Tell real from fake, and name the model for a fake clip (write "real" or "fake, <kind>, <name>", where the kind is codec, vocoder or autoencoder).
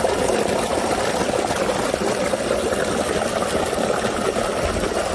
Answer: real